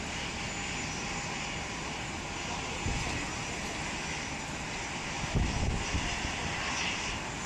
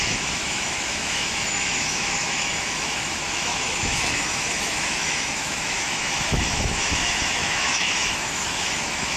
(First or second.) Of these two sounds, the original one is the first